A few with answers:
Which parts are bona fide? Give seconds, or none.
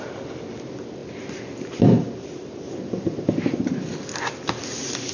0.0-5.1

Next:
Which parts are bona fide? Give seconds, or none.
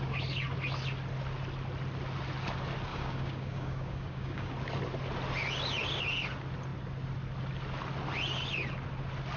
0.0-2.9; 4.5-9.4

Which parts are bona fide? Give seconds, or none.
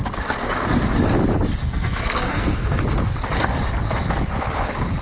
0.0-1.6; 2.8-5.0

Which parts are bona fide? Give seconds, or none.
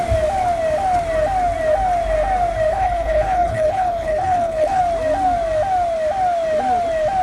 0.0-2.7; 4.8-7.2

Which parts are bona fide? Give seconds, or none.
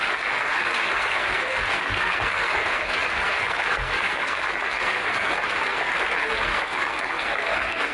none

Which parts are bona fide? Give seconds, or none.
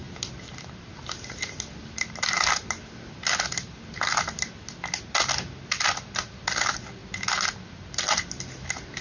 0.0-9.0